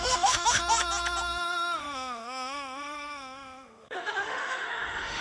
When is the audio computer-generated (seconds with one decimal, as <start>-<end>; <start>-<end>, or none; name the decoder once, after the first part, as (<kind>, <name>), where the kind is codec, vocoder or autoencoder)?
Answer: 0.0-0.6 (autoencoder, DAC-VAE); 1.8-5.2